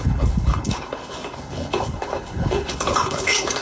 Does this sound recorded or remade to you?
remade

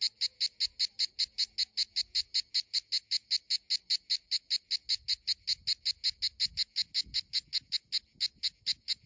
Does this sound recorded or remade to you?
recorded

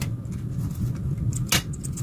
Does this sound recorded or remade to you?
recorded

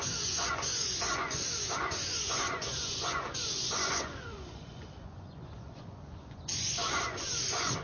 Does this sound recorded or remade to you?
remade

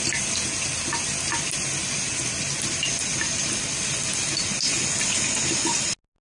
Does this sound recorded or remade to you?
recorded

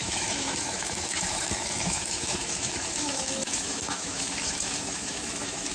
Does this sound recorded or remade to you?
remade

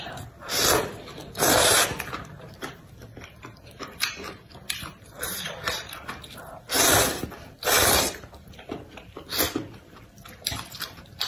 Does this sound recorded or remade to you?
remade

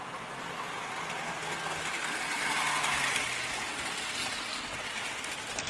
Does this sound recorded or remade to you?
recorded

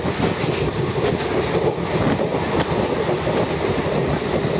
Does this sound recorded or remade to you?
recorded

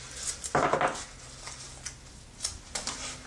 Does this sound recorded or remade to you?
recorded